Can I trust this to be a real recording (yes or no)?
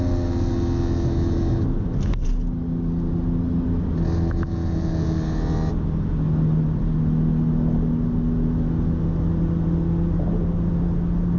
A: yes